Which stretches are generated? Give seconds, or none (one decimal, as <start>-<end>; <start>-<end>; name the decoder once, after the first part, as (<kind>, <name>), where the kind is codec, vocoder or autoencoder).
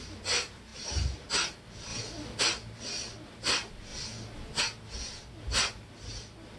none